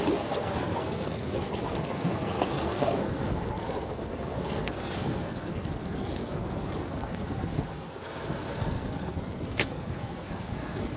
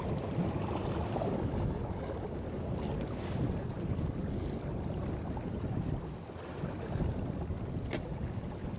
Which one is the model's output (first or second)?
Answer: first